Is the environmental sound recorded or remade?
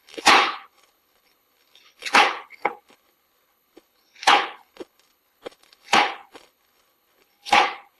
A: remade